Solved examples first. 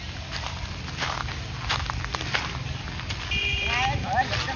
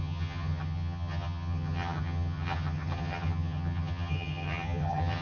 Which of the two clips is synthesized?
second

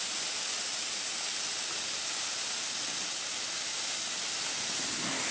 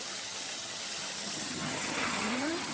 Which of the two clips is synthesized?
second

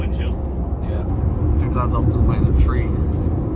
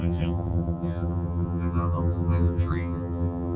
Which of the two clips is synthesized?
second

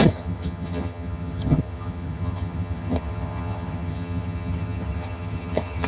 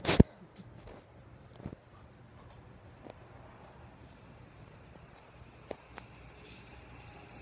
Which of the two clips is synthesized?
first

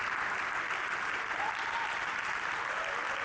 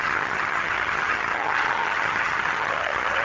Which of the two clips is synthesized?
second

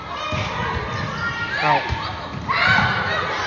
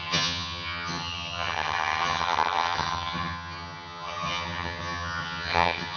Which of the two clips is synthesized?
second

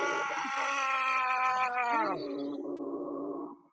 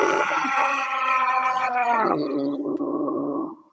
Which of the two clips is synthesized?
second